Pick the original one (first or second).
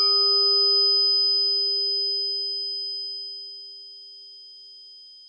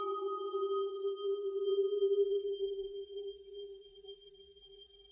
first